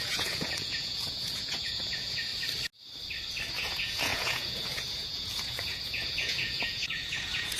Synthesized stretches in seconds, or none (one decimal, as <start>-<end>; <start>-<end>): 0.0-2.3; 3.5-7.6

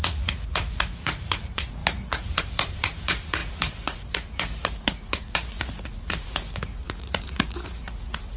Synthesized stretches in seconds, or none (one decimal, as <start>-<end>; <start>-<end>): 0.0-8.4

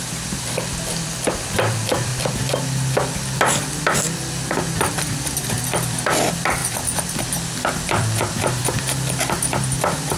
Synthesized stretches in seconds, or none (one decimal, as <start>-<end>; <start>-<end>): 0.0-2.1; 4.9-10.2

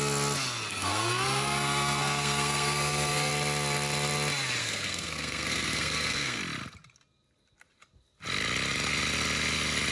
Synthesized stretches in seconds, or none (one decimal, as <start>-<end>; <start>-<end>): 0.7-3.3; 4.6-6.4

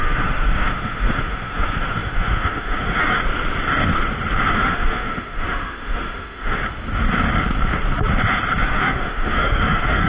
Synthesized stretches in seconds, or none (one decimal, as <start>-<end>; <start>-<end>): 0.0-3.2; 4.5-6.6; 8.6-10.1

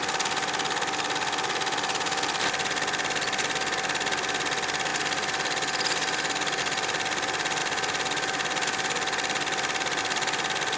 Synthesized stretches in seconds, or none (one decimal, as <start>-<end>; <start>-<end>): none

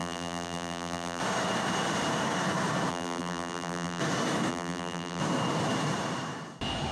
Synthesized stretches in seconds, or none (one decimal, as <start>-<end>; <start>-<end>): 0.0-1.2; 2.9-4.0; 4.5-5.2

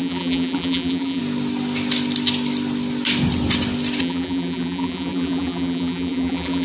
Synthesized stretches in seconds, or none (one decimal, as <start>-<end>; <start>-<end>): 0.0-1.2; 4.0-6.6